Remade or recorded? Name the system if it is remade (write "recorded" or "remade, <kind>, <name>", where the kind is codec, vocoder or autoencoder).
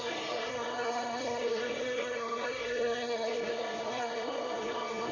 remade, codec, SNAC